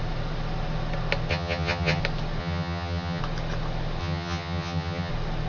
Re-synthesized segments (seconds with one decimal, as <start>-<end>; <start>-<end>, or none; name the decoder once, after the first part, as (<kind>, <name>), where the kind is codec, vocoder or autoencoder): 1.3-2.0 (vocoder, HiFi-GAN); 2.4-3.2; 4.0-5.1